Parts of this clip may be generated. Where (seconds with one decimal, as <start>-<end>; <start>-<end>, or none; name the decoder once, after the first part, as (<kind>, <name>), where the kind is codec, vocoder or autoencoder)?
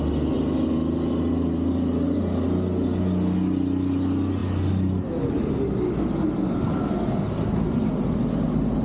none